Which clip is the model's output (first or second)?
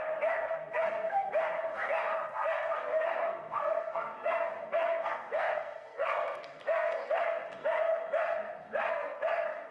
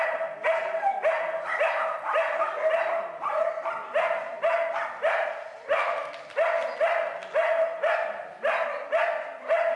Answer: first